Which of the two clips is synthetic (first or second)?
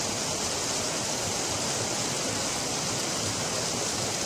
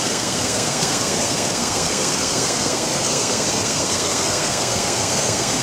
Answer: second